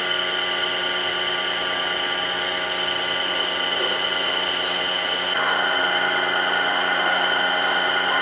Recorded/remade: recorded